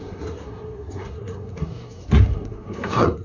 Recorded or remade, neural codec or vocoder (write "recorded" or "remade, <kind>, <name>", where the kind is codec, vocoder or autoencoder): remade, codec, SNAC